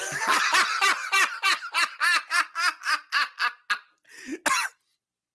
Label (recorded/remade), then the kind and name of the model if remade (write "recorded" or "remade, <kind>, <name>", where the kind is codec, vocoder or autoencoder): recorded